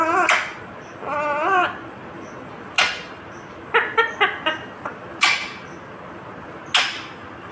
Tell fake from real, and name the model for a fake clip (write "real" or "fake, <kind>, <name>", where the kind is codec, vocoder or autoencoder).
real